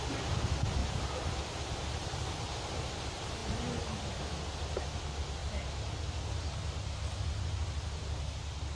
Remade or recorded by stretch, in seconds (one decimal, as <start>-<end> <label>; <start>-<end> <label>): 0.0-8.7 recorded